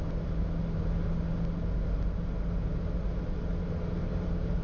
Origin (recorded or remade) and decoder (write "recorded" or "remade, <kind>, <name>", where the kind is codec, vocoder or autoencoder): recorded